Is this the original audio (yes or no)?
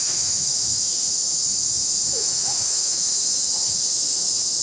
no